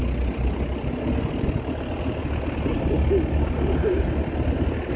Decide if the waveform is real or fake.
real